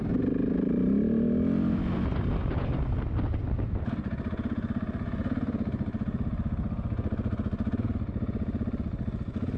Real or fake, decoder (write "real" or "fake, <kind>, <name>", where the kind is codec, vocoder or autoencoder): real